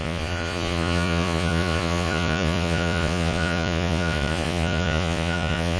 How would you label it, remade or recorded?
remade